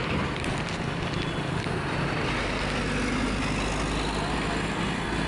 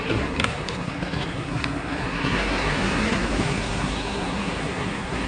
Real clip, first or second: first